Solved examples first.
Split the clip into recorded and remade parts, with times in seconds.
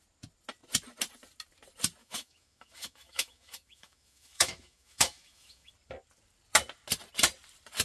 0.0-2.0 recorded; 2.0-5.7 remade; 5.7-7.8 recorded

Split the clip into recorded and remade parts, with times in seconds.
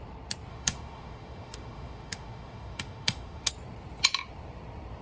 0.0-0.5 recorded; 0.5-3.5 remade; 3.5-5.0 recorded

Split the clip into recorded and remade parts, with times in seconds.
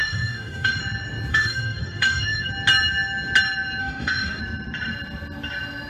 0.0-0.8 remade; 0.8-1.3 recorded; 1.3-2.5 remade; 2.5-3.8 recorded; 3.8-4.4 remade; 4.4-5.9 recorded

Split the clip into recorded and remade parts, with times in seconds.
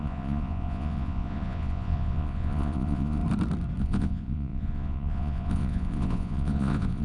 0.0-3.2 remade; 3.2-3.8 recorded; 3.8-7.0 remade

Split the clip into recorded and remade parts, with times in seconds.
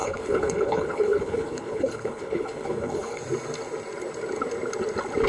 0.0-3.2 remade; 3.2-5.3 recorded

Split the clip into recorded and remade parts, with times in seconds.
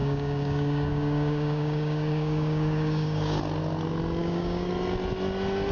0.0-3.4 remade; 3.4-4.2 recorded; 4.2-4.7 remade; 4.7-5.7 recorded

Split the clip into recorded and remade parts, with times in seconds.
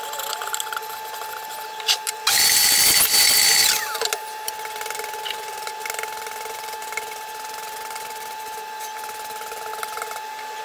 0.0-10.6 recorded